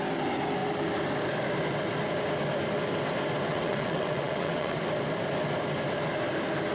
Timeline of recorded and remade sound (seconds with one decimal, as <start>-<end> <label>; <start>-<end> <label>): 0.0-3.5 recorded; 3.5-4.8 remade; 4.8-6.7 recorded